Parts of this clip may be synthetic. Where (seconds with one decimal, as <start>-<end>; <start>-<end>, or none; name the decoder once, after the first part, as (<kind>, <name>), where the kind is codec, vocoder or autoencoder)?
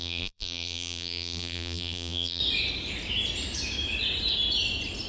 0.0-2.4 (vocoder, BigVGAN v2)